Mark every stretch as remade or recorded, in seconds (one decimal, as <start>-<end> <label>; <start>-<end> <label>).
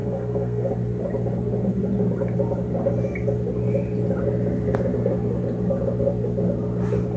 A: 0.0-0.7 remade; 0.7-7.2 recorded